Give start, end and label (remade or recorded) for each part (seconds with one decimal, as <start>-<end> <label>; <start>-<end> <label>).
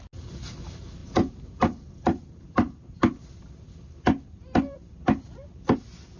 0.0-6.2 recorded